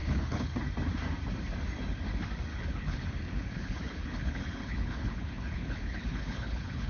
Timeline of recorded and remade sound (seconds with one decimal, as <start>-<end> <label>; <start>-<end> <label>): 0.0-0.6 remade; 0.6-2.5 recorded; 2.5-6.9 remade